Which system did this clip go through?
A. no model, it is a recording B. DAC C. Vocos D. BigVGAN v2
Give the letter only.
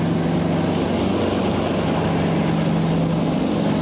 A